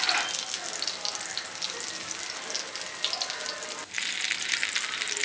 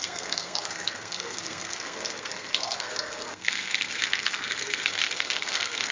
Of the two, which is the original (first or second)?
first